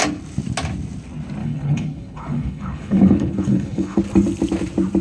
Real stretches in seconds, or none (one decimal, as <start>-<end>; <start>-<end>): 0.0-1.4; 4.0-5.0